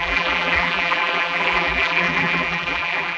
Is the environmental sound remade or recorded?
remade